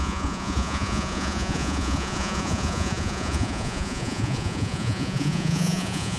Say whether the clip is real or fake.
fake